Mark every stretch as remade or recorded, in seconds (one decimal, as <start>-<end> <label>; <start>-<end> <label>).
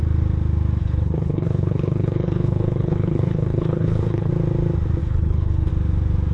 0.0-0.8 recorded; 0.8-4.3 remade; 4.3-5.0 recorded; 5.0-5.7 remade; 5.7-6.3 recorded